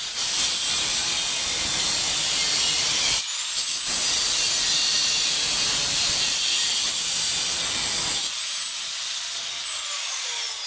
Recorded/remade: remade